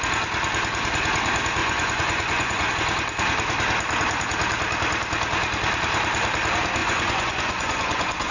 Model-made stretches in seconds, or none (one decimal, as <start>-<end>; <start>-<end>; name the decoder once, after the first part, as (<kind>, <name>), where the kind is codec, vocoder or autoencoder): 1.6-2.7 (vocoder, Vocos); 6.8-8.3